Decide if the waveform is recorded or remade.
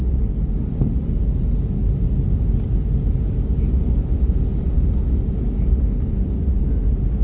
recorded